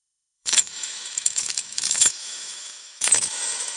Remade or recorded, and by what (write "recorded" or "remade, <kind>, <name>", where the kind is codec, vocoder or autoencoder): remade, autoencoder, DAC-VAE